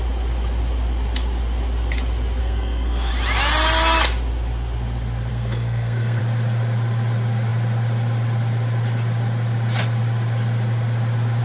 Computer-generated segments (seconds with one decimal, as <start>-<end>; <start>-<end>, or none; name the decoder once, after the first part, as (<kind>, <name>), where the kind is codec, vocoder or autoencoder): 2.4-3.1 (codec, SNAC); 5.3-6.2

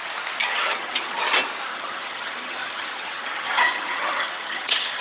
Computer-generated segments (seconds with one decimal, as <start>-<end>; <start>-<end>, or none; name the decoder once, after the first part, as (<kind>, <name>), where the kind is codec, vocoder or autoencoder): 0.4-1.2 (vocoder, HiFi-GAN); 1.7-5.0

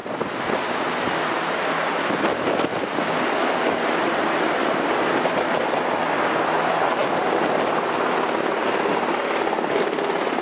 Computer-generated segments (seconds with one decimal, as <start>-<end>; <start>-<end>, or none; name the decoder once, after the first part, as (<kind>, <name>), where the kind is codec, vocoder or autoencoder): none

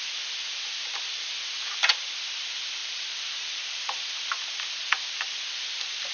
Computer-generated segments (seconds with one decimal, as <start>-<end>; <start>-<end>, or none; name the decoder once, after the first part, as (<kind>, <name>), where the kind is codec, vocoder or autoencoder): 2.8-3.8 (vocoder, BigVGAN v2)